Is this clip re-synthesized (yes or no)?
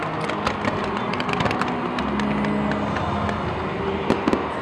no